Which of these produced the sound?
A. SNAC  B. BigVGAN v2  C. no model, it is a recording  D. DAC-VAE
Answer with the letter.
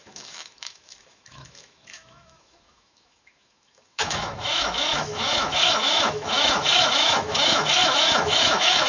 D